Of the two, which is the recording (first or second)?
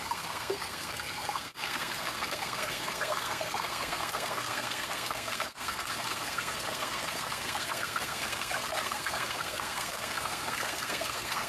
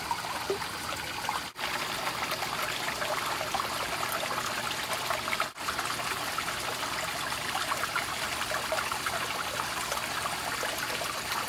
second